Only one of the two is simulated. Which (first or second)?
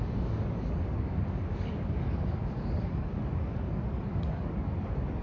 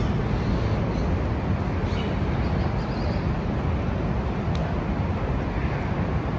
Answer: first